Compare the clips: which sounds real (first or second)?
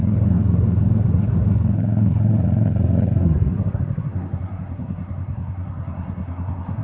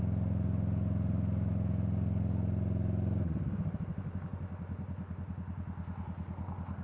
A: second